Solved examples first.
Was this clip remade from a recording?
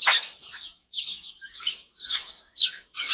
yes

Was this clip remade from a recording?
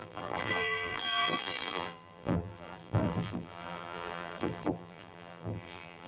yes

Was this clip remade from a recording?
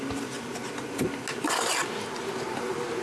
no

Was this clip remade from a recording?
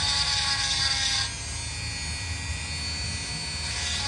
no